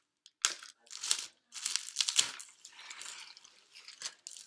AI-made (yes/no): no